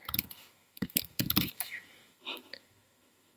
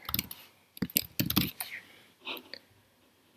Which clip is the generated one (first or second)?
first